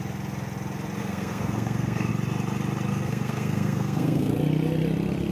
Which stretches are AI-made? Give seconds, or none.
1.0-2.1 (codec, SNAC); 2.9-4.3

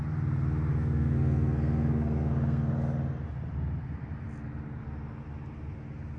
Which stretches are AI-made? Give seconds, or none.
0.7-2.7 (codec, SNAC)

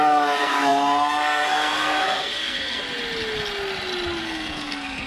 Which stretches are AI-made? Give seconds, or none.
0.0-2.8 (codec, SNAC); 4.2-5.1

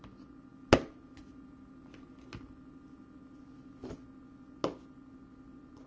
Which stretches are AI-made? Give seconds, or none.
none

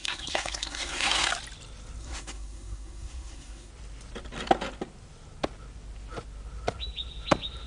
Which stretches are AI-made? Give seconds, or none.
0.0-1.3 (codec, SNAC); 2.0-3.7

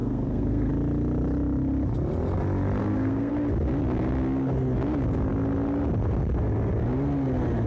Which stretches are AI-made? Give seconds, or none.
0.0-0.7 (codec, SNAC); 2.8-3.3

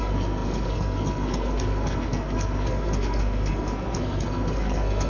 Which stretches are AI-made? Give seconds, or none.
0.0-5.1 (codec, SNAC)